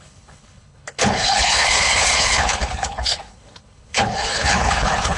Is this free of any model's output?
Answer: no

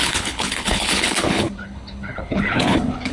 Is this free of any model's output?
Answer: no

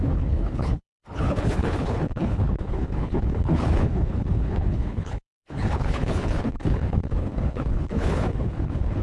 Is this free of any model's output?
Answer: no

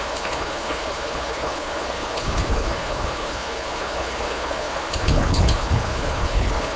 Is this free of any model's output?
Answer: no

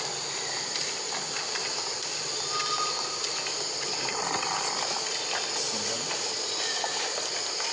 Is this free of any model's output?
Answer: yes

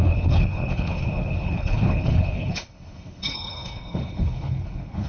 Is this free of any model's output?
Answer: no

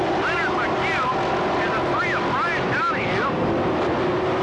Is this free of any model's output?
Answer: yes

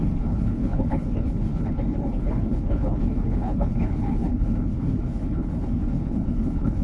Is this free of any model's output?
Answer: no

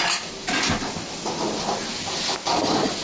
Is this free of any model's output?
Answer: yes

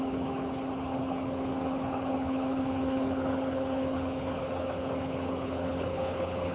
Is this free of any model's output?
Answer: no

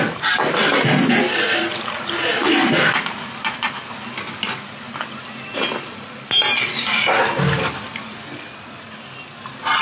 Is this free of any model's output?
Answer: yes